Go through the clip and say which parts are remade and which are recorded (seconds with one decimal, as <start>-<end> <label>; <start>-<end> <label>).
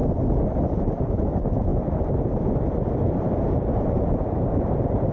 0.0-0.8 recorded; 0.8-1.7 remade; 1.7-2.7 recorded; 2.7-5.1 remade